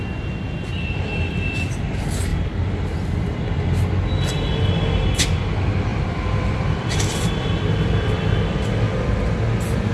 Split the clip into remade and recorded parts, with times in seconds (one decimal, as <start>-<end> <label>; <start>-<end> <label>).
0.0-5.9 recorded; 5.9-7.3 remade; 7.3-9.9 recorded